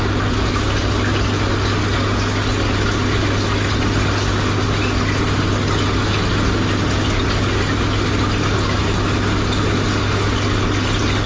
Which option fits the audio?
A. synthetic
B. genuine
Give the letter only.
B